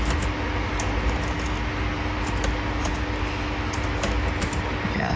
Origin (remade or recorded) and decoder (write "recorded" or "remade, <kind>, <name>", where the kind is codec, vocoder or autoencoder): recorded